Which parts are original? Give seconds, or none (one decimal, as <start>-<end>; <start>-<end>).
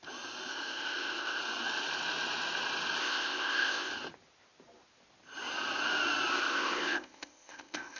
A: 0.0-0.5; 1.4-3.0; 3.9-6.3